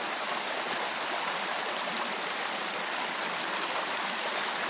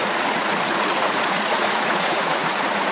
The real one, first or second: first